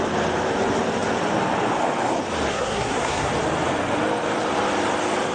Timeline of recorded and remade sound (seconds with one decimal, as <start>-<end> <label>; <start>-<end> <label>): 0.0-2.5 recorded; 2.5-3.3 remade; 3.3-5.3 recorded